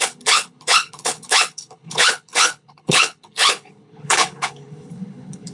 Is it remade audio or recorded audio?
remade